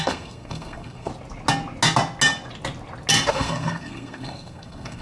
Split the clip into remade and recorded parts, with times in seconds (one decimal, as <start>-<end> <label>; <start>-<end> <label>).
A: 0.0-1.1 remade; 1.1-3.3 recorded; 3.3-5.0 remade